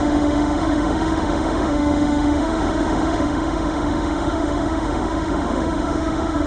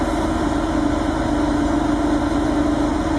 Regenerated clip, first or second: first